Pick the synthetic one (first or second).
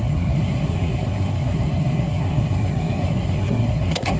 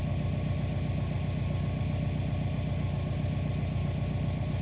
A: first